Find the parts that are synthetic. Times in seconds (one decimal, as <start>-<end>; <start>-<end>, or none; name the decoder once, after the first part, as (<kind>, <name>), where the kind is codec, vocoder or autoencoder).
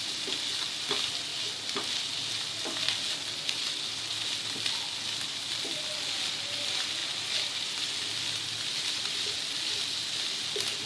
none